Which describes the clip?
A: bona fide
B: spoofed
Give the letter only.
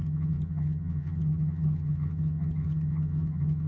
B